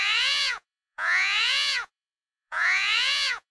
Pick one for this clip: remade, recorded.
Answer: remade